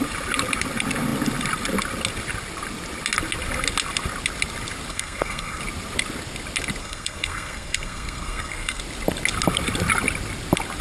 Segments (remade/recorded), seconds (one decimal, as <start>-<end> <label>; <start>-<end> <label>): 0.0-4.9 recorded; 4.9-5.6 remade; 5.6-6.8 recorded; 6.8-8.8 remade; 8.8-10.8 recorded